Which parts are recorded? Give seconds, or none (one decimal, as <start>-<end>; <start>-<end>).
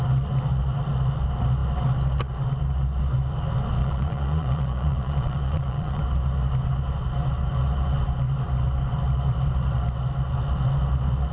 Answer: 0.0-3.8; 6.0-11.3